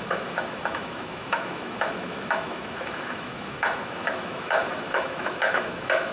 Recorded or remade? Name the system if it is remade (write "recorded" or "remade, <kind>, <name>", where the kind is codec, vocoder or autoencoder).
remade, autoencoder, DAC-VAE